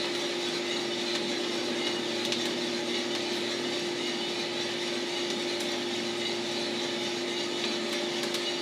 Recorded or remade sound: recorded